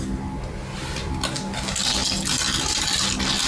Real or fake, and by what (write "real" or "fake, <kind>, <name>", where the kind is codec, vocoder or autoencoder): real